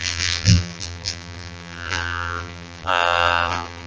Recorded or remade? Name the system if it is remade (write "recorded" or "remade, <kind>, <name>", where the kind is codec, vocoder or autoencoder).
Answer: remade, vocoder, BigVGAN v2